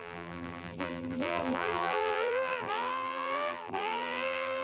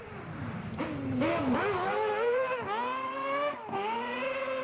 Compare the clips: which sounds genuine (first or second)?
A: second